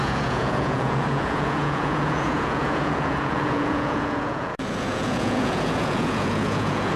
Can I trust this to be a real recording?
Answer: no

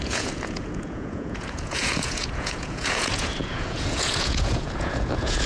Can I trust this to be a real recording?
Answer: no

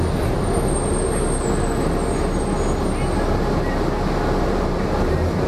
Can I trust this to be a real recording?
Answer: yes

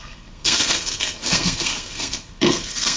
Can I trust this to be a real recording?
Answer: no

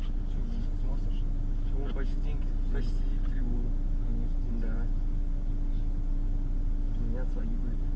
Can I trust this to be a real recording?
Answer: yes